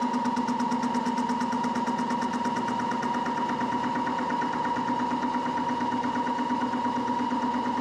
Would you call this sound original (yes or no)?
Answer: yes